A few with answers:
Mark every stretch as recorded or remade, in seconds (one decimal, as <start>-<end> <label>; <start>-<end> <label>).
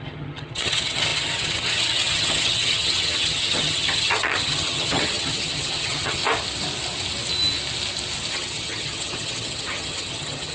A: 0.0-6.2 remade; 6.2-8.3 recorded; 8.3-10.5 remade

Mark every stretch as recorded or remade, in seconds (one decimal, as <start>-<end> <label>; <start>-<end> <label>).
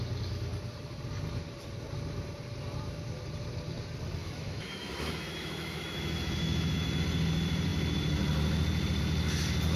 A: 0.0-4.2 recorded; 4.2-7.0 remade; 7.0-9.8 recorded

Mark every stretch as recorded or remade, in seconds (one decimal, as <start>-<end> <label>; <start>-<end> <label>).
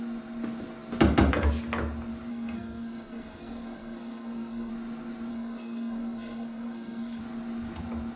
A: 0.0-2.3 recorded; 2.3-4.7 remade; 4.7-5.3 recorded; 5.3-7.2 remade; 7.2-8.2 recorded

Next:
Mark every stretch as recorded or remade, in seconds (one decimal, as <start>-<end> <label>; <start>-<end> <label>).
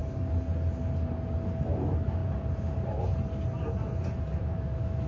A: 0.0-1.6 recorded; 1.6-2.2 remade; 2.2-4.4 recorded; 4.4-5.1 remade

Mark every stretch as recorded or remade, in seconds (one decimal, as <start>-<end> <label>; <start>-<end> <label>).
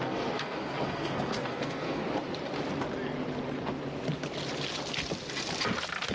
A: 0.0-2.0 remade; 2.0-6.1 recorded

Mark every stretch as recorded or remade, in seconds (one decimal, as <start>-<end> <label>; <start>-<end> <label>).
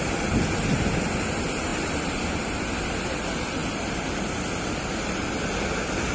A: 0.0-6.1 recorded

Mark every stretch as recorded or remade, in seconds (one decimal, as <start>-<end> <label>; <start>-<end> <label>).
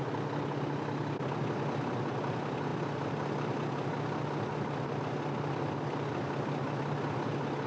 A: 0.0-7.7 recorded